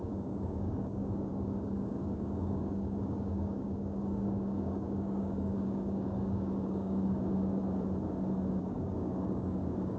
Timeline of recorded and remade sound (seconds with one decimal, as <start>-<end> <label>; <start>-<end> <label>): 0.0-7.6 remade; 7.6-8.6 recorded; 8.6-10.0 remade